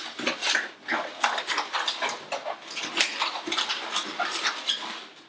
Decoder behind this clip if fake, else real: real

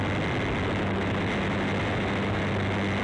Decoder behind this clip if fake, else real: real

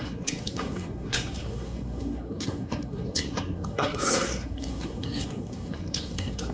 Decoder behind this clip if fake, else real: fake, codec, SNAC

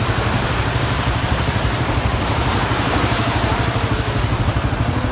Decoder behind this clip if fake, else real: fake, vocoder, BigVGAN v2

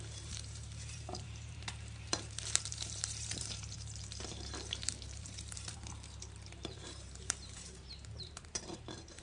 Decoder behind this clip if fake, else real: fake, vocoder, BigVGAN v2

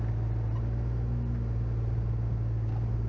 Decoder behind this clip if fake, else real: real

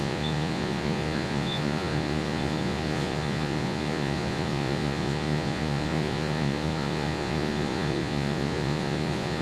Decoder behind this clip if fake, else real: fake, vocoder, Vocos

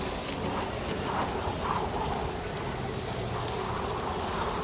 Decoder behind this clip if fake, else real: real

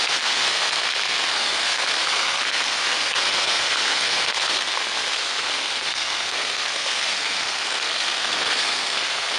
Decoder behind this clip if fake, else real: fake, codec, SNAC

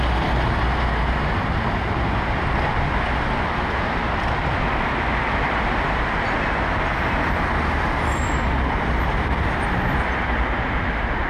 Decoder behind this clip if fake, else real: real